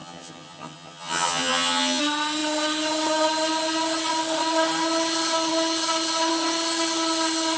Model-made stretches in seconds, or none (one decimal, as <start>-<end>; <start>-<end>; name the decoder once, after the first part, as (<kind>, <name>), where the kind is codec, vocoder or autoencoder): 0.0-2.0 (vocoder, HiFi-GAN)